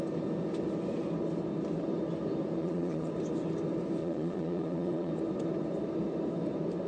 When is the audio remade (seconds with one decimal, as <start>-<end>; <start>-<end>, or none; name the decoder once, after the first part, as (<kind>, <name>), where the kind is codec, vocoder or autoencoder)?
2.6-3.1 (vocoder, Vocos); 4.0-5.1